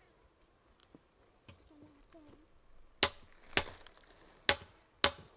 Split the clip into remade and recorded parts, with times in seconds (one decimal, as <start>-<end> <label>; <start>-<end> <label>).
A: 0.0-5.4 recorded